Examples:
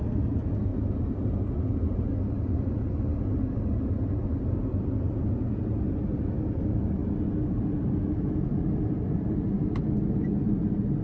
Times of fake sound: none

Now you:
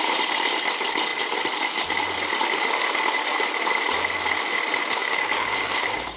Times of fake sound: 5.0-6.2

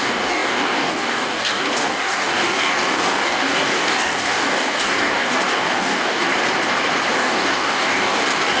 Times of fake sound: 0.0-6.3; 7.1-8.6